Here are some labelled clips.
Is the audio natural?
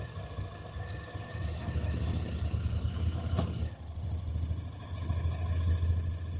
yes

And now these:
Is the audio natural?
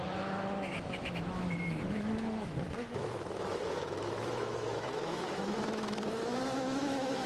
no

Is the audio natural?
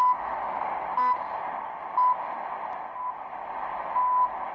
yes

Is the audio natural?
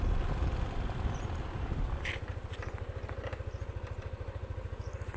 yes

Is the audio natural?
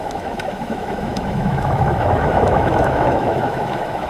no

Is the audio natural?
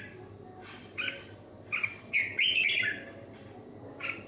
yes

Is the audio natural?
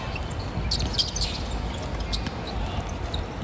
yes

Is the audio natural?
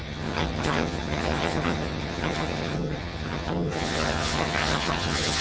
no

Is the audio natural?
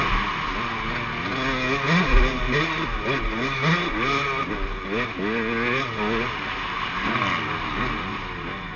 yes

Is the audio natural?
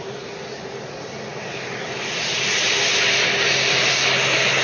yes